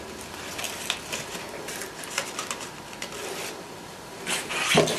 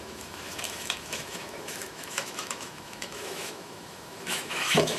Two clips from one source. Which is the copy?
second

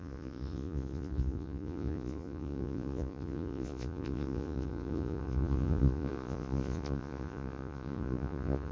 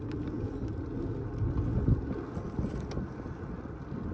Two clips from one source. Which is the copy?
first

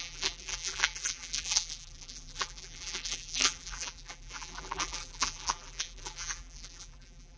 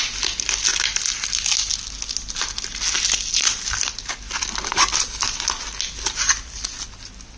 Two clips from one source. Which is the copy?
first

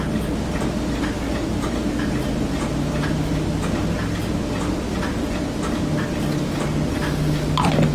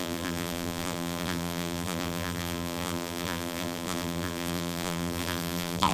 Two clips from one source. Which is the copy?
second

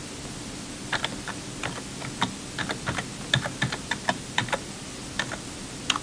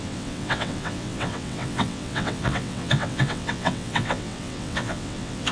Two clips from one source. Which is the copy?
second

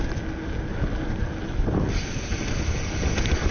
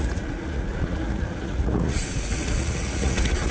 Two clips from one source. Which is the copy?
second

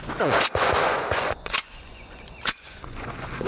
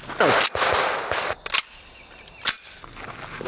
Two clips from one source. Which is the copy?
first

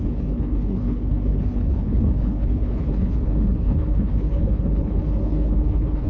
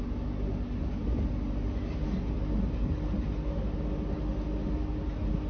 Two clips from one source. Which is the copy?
first